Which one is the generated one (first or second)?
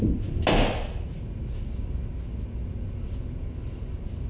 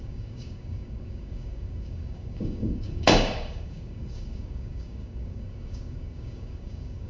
second